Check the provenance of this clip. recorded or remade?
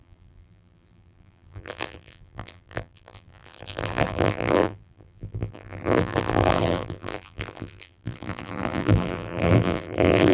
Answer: remade